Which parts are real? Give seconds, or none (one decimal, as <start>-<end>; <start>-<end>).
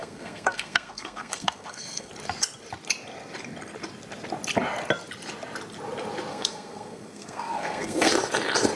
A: 2.1-6.3; 8.1-8.8